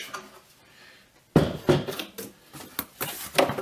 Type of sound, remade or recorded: recorded